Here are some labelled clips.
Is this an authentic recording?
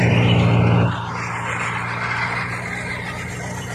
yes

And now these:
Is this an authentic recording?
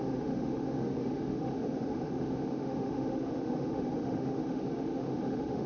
no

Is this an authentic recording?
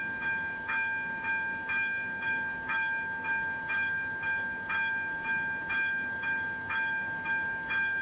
no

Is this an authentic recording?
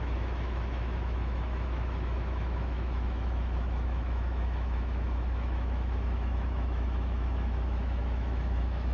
no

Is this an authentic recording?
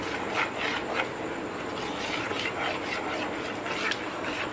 yes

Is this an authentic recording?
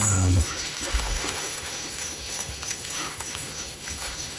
no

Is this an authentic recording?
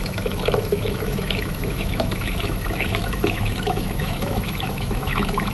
no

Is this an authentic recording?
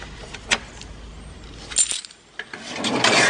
yes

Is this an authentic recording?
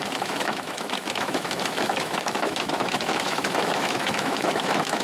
no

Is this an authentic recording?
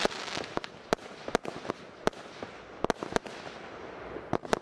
yes